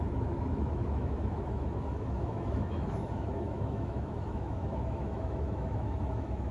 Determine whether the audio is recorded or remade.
remade